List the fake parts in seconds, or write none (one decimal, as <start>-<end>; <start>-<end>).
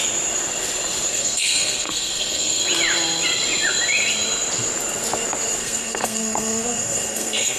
1.1-2.6; 5.6-7.6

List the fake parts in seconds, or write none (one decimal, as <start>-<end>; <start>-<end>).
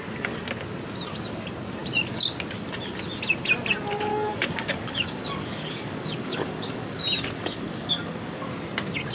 4.1-8.5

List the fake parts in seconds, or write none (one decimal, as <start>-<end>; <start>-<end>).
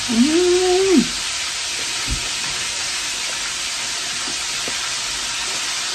none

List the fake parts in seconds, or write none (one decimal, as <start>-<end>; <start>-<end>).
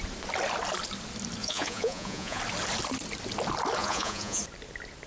1.4-2.4; 3.8-4.4